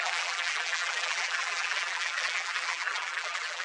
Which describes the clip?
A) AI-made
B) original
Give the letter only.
A